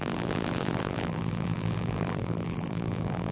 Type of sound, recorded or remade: remade